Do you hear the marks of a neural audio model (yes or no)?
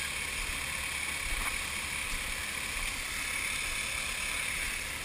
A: no